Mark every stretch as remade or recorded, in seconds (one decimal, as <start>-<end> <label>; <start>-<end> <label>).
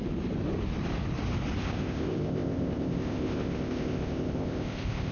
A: 0.0-1.6 recorded; 1.6-5.1 remade